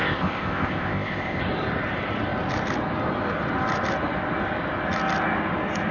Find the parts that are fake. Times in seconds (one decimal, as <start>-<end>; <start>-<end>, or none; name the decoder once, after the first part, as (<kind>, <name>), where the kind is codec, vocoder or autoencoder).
0.0-1.4 (codec, ZipCodec)